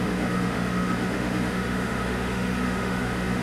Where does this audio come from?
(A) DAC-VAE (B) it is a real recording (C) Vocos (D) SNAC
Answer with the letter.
A